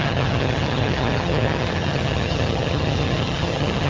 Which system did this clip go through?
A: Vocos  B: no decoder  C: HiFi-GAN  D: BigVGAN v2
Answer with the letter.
C